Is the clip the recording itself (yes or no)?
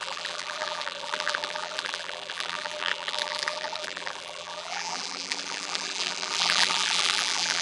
no